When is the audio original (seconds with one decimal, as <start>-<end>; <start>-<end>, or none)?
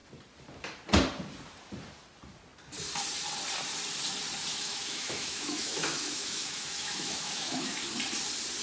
0.0-4.5; 7.8-8.6